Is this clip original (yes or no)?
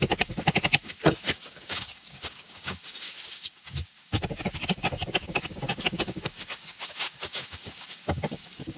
no